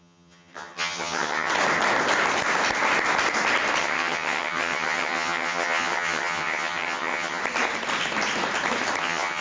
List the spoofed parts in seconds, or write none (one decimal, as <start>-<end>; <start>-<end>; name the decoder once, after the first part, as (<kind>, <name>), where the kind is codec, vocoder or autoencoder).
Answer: 0.0-1.5 (vocoder, HiFi-GAN); 3.8-7.4; 9.0-9.4